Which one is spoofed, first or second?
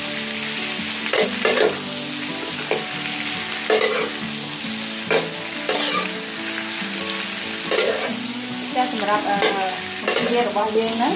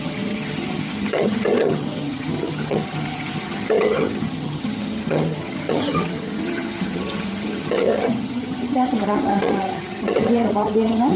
second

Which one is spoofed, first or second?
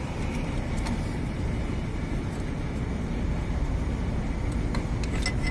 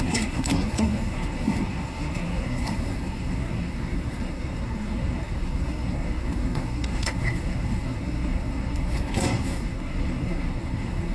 second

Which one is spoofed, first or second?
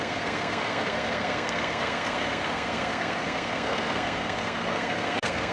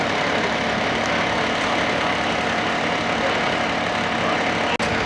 first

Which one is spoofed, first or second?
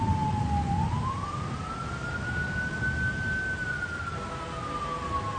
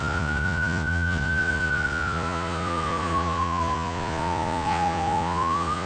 second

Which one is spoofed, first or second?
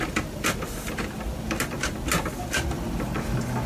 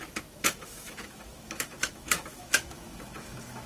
second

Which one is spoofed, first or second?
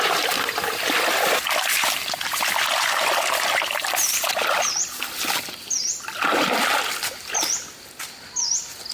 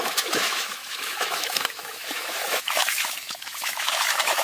second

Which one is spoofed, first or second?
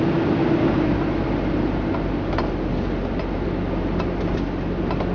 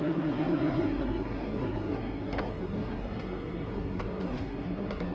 second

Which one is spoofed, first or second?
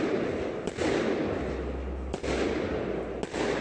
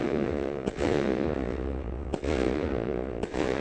second